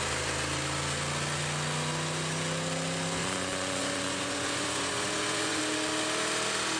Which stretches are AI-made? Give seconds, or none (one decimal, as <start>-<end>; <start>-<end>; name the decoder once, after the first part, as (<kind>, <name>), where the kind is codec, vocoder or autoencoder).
3.2-5.6 (vocoder, Vocos)